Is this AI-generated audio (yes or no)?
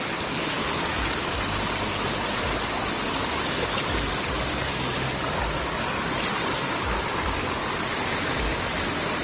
no